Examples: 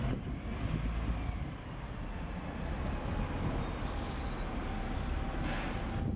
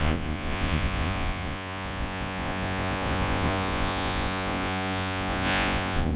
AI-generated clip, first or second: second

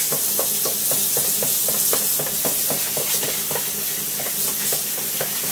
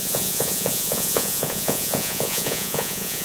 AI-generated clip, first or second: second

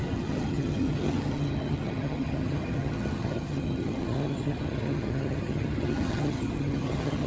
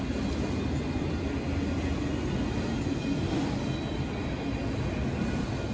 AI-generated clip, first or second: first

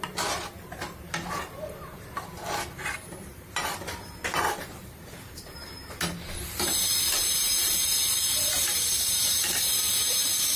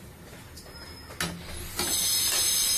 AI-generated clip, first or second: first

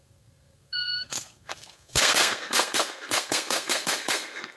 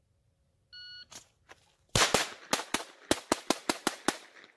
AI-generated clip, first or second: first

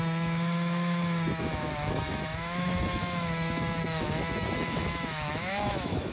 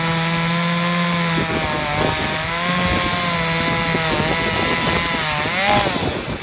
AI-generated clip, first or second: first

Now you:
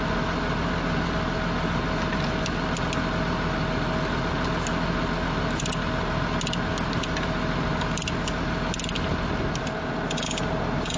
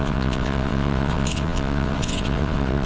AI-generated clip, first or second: second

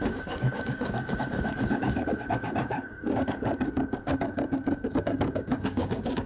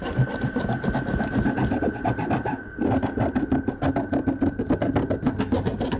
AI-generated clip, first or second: first